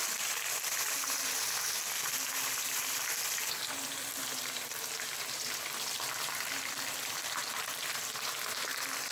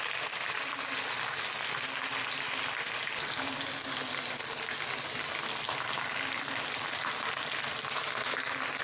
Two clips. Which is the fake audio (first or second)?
first